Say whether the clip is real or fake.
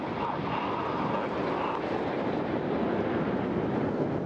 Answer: real